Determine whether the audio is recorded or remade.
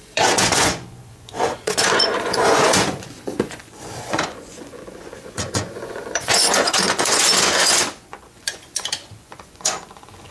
remade